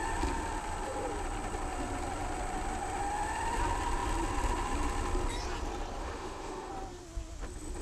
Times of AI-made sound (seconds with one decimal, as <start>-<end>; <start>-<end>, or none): 6.0-6.7